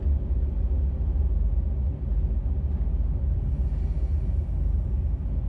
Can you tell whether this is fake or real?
real